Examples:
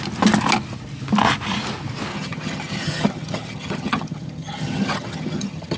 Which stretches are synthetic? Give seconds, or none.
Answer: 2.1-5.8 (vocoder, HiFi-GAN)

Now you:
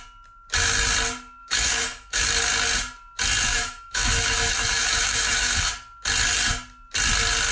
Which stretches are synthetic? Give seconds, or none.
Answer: 1.4-2.2 (autoencoder, DAC-VAE); 3.5-5.7

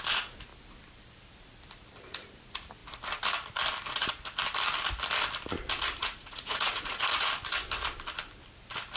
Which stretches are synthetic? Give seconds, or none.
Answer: 6.0-7.3 (vocoder, Vocos)